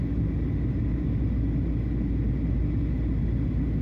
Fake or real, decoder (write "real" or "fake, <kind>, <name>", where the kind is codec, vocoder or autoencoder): real